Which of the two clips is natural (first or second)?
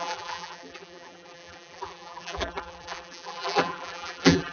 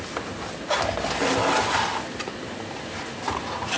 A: second